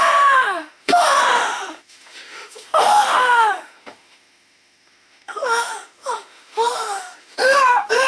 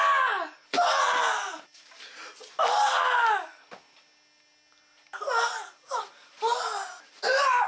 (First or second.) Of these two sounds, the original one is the second